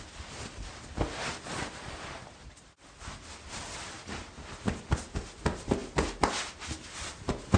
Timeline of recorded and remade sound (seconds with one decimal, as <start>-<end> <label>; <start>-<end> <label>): 0.0-7.6 recorded